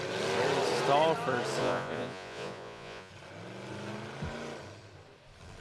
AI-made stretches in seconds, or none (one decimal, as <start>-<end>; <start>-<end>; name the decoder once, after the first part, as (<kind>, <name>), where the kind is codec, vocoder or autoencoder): 1.6-3.1 (vocoder, Vocos)

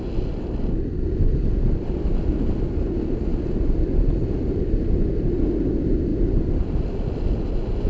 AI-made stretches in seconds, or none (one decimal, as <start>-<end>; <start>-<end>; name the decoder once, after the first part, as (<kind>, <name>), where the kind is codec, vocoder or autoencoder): 6.1-7.4 (vocoder, BigVGAN v2)